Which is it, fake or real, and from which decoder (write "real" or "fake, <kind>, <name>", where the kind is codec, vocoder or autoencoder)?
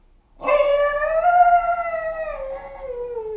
real